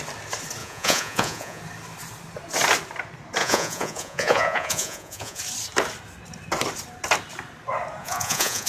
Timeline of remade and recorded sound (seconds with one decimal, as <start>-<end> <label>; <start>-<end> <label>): 0.0-0.6 recorded; 0.6-1.6 remade; 1.6-3.4 recorded; 3.4-5.4 remade; 5.4-8.0 recorded; 8.0-8.7 remade